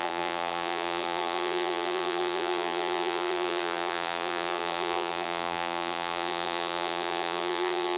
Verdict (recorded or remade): remade